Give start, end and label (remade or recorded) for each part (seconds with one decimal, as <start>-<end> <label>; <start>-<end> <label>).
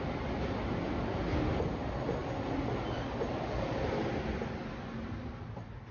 0.0-5.9 recorded